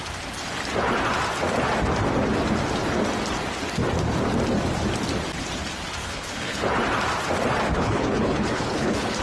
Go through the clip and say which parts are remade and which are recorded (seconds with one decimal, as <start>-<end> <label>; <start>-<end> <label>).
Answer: 0.0-6.0 recorded; 6.0-6.6 remade; 6.6-7.7 recorded; 7.7-9.2 remade